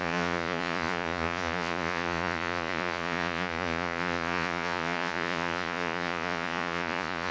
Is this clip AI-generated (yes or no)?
yes